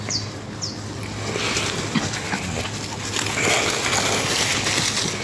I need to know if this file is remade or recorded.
recorded